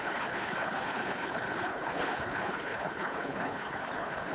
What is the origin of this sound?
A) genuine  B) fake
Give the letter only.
B